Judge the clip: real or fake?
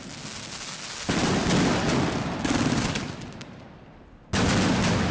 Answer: real